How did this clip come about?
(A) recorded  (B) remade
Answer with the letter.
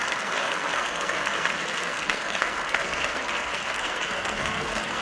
B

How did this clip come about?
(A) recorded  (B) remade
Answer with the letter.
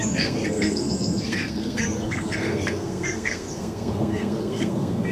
B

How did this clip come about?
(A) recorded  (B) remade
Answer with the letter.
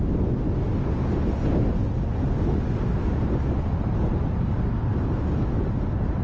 A